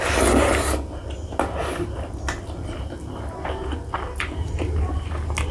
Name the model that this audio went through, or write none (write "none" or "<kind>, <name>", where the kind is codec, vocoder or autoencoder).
none